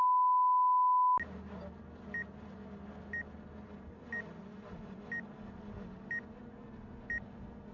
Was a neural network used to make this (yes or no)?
no